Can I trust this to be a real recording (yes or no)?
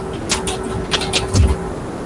yes